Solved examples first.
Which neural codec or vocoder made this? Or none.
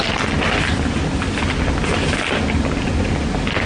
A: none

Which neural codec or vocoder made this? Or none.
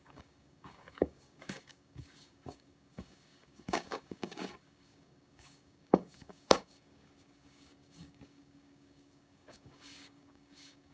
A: codec, DAC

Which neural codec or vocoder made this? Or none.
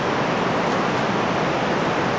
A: none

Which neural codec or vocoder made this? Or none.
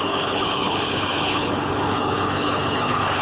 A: codec, HILCodec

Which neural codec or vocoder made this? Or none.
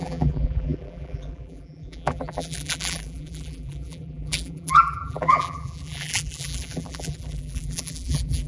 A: vocoder, BigVGAN v2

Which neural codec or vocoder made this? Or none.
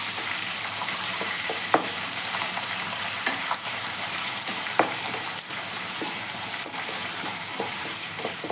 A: vocoder, BigVGAN v2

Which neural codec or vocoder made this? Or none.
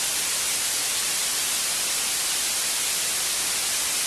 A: none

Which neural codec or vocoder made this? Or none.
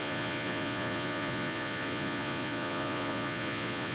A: vocoder, Vocos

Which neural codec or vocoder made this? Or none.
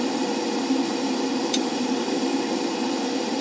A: vocoder, BigVGAN v2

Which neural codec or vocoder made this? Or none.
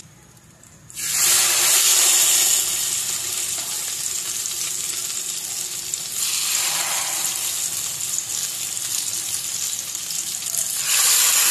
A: none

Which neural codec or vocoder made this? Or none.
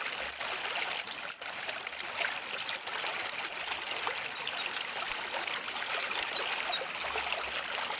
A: none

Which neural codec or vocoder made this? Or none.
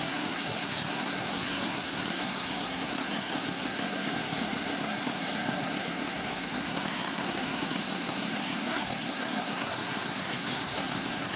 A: codec, SNAC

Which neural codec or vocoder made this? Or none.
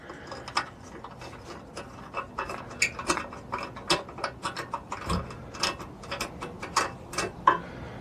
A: none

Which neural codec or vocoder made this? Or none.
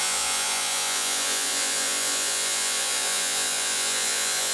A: vocoder, Vocos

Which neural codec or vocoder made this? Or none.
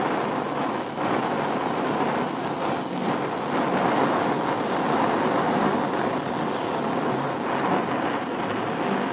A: none